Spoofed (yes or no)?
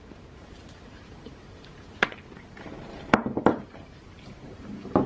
yes